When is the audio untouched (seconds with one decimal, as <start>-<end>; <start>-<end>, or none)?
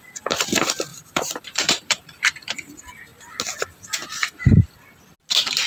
0.0-0.9; 2.2-5.7